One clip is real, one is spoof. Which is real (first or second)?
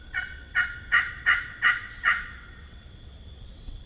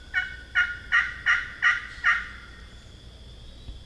second